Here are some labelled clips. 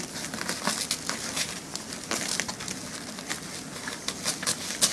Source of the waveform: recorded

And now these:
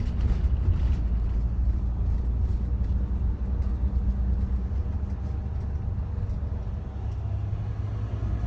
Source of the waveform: recorded